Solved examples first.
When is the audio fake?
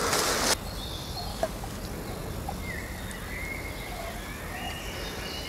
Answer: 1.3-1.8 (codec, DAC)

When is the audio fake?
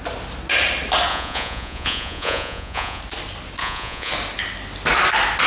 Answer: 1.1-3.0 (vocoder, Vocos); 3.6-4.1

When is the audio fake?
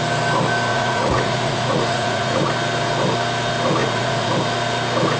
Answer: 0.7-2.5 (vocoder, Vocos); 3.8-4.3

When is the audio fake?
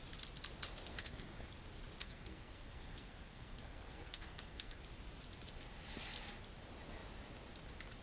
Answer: 0.9-1.5 (codec, SNAC); 2.0-4.8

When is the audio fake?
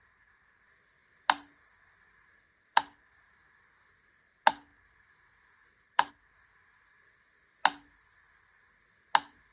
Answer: none